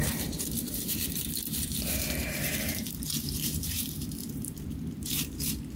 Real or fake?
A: fake